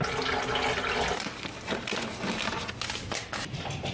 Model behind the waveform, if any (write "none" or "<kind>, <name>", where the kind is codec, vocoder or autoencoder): none